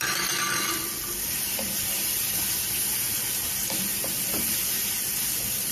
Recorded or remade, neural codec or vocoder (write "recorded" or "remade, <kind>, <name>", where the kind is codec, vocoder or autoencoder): recorded